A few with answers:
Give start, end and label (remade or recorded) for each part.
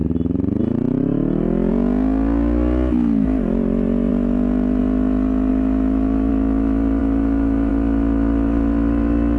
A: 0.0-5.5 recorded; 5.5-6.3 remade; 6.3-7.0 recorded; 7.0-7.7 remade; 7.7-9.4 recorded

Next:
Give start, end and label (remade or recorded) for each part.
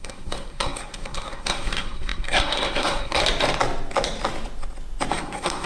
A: 0.0-3.2 remade; 3.2-5.1 recorded; 5.1-5.7 remade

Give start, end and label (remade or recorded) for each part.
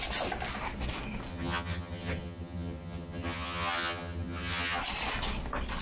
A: 0.0-1.3 recorded; 1.3-4.8 remade; 4.8-5.8 recorded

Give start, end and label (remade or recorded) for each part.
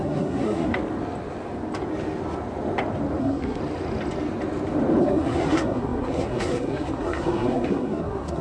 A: 0.0-0.7 remade; 0.7-3.2 recorded; 3.2-3.6 remade; 3.6-5.0 recorded; 5.0-8.4 remade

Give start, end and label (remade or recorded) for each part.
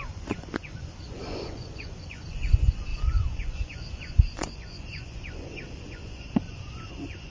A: 0.0-7.3 remade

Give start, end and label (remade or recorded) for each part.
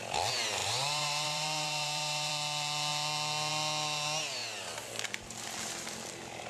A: 0.0-0.6 recorded; 0.6-2.3 remade; 2.3-6.5 recorded